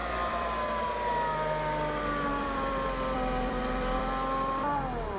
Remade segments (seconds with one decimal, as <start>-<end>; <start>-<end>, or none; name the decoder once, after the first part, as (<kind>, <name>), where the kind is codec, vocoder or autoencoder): 0.0-0.8 (vocoder, BigVGAN v2); 2.3-4.0